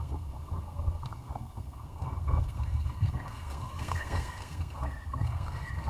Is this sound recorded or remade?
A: remade